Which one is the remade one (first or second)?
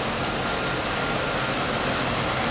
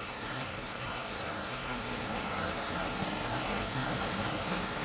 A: second